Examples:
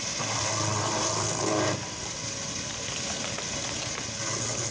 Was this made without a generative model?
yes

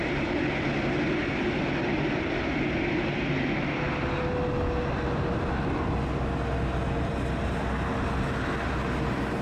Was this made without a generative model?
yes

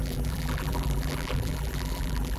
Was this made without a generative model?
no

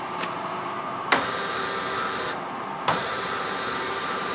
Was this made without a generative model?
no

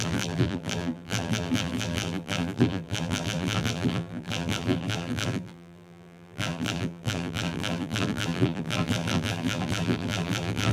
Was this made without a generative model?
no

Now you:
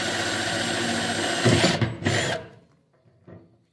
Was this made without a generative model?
yes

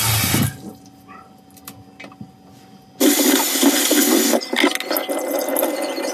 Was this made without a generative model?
yes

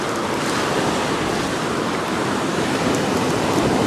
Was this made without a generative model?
yes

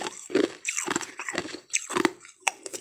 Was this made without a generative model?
no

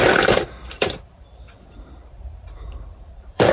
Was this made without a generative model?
no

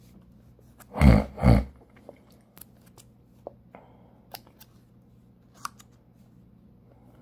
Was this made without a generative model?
yes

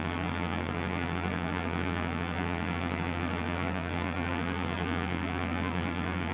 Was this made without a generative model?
no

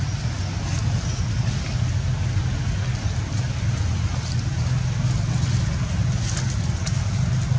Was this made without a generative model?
yes